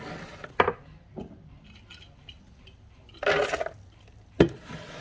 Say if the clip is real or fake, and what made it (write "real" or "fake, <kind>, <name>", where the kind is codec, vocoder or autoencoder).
real